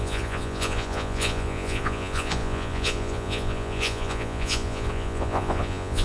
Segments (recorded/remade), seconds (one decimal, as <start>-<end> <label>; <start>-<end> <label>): 0.0-6.0 remade